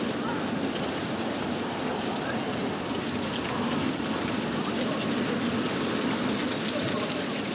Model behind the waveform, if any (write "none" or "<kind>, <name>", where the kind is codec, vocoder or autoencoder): none